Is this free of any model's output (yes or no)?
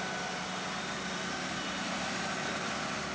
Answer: yes